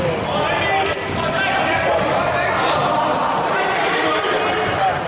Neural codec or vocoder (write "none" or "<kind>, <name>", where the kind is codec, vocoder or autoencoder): none